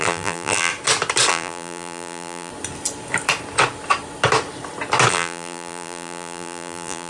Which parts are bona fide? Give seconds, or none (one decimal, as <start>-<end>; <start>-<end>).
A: 0.7-1.3; 2.5-5.1